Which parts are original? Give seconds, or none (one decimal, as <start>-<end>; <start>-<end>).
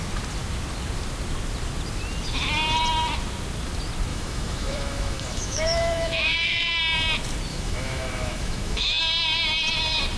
0.0-4.1; 6.8-7.5; 9.0-10.2